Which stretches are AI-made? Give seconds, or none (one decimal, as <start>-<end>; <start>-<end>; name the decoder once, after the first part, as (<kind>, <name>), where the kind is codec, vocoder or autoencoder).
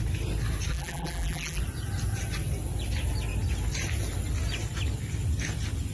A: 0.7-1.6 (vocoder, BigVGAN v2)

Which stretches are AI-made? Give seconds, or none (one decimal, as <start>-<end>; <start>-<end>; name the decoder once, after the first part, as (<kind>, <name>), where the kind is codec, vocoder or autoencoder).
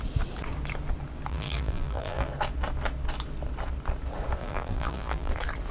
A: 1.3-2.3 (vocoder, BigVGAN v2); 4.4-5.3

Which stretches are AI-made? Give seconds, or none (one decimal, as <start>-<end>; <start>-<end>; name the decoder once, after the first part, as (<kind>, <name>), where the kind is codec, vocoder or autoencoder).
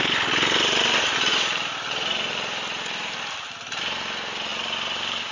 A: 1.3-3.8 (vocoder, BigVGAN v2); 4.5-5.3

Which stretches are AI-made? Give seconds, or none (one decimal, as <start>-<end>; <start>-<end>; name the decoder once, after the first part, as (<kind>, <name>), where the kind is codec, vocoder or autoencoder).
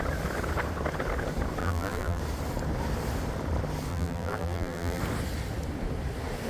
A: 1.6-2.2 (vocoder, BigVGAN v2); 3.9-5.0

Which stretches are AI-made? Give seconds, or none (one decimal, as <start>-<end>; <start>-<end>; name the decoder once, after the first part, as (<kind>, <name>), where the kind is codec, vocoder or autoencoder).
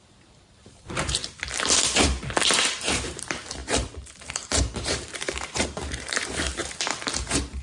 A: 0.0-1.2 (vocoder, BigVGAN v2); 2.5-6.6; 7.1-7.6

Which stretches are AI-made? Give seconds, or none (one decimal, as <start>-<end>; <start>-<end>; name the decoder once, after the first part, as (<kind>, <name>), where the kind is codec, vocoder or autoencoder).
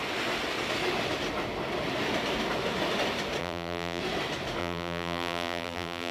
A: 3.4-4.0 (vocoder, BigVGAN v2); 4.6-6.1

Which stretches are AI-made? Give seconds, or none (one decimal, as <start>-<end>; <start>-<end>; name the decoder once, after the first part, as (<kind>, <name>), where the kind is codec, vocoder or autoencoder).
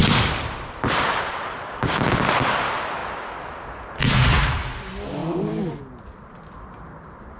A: 0.0-2.5 (vocoder, BigVGAN v2); 3.0-3.9; 5.2-5.8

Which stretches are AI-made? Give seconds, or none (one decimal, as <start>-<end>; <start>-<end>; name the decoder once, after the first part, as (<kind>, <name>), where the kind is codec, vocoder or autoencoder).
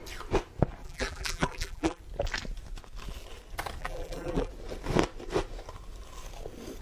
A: 0.8-2.0 (vocoder, BigVGAN v2); 3.8-4.5